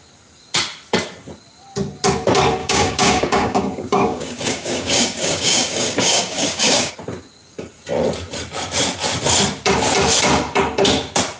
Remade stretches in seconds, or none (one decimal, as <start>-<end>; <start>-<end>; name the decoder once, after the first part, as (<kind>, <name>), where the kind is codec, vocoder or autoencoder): 2.6-6.9 (codec, DAC)